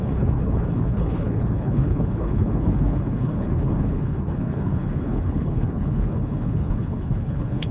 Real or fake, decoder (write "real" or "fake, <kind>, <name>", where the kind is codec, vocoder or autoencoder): fake, codec, HILCodec